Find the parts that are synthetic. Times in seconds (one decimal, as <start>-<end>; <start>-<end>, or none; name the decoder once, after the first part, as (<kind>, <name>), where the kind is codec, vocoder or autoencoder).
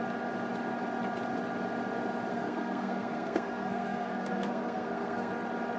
2.3-5.3 (codec, SNAC)